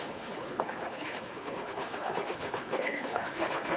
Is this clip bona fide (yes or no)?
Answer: no